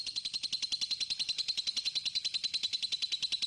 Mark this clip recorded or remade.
recorded